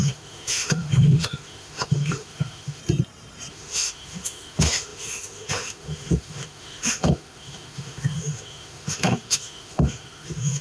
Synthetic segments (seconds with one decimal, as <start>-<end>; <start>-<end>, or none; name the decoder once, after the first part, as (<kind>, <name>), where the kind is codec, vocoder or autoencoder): 0.0-2.8 (autoencoder, DAC-VAE); 3.5-10.6